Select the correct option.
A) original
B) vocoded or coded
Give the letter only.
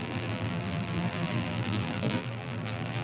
B